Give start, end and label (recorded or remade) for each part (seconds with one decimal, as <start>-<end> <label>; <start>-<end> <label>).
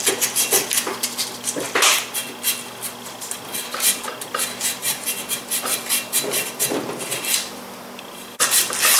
0.0-4.8 recorded; 4.8-5.8 remade; 5.8-9.0 recorded